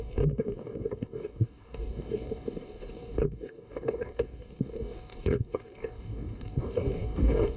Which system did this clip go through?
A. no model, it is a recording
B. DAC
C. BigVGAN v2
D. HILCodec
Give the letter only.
B